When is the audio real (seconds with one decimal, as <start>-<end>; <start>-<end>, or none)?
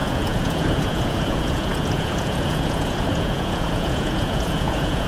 none